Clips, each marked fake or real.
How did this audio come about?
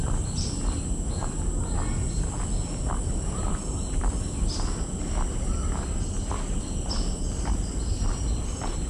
real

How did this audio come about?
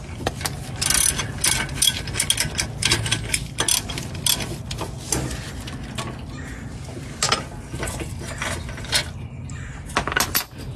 real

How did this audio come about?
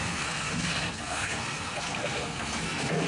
fake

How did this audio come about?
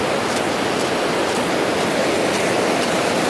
real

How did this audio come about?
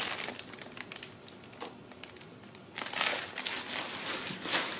real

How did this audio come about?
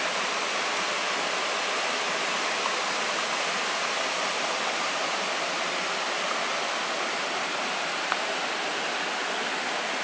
real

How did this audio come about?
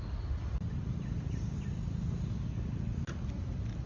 real